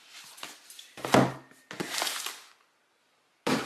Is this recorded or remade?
recorded